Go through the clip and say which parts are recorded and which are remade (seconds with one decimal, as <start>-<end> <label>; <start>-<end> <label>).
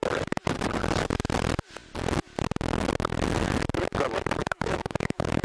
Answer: 0.0-4.4 recorded; 4.4-5.4 remade